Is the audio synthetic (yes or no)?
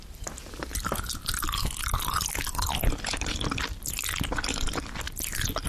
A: no